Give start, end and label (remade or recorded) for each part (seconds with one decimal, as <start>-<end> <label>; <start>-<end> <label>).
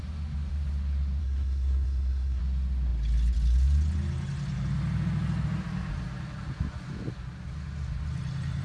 0.0-1.2 recorded; 1.2-2.4 remade; 2.4-8.6 recorded